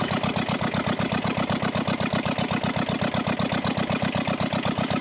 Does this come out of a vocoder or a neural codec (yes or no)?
no